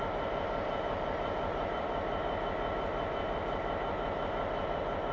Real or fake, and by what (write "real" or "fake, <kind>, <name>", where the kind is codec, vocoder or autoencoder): fake, vocoder, BigVGAN v2